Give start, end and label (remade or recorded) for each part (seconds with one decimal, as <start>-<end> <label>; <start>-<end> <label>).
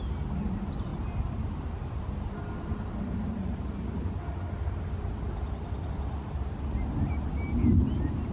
0.0-8.3 recorded